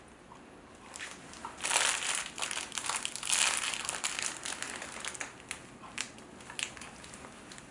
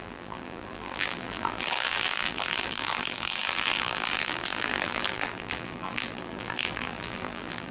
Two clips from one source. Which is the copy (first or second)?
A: second